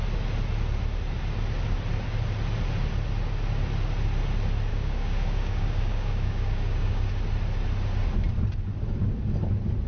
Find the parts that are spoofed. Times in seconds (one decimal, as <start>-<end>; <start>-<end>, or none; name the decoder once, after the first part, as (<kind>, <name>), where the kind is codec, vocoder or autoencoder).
4.7-7.1 (codec, DAC)